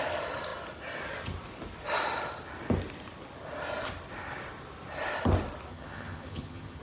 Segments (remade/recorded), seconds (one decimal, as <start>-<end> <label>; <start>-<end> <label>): 0.0-5.7 recorded; 5.7-6.8 remade